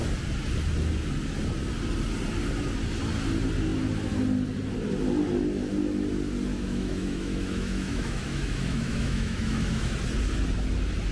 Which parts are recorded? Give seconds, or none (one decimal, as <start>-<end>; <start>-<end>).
0.0-6.5; 9.9-11.1

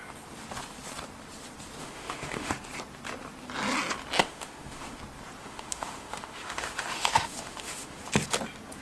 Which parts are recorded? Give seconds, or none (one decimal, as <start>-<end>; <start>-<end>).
0.0-1.8; 2.5-4.2; 5.0-5.4; 8.0-8.8

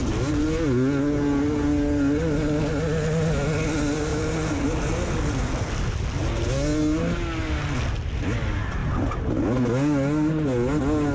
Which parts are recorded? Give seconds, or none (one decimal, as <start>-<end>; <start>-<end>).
0.0-11.1